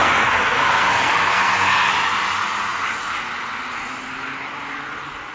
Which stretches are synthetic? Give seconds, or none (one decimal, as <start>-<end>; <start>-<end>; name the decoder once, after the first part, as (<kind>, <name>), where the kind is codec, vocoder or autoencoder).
0.0-1.9 (codec, SNAC)